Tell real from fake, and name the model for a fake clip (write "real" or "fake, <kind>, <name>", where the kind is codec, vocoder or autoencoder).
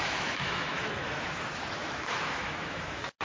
fake, autoencoder, DAC-VAE